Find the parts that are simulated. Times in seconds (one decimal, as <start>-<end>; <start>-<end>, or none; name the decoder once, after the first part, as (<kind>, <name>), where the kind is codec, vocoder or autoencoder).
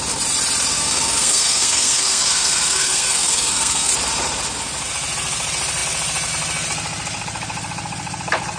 0.7-3.9 (codec, SNAC)